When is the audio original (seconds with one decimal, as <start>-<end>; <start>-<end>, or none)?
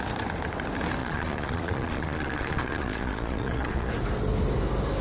0.0-1.0; 3.9-5.0